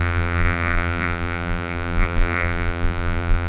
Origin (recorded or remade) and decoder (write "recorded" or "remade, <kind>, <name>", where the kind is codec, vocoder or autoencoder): remade, vocoder, BigVGAN v2